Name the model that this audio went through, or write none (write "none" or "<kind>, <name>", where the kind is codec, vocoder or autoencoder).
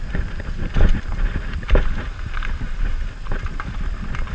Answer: none